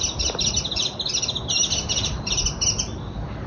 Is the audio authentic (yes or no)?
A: yes